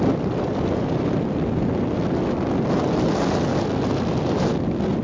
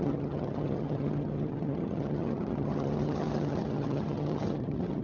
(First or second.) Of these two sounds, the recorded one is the first